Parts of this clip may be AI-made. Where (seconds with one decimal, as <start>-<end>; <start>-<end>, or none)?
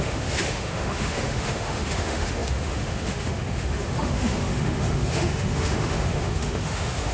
0.0-7.1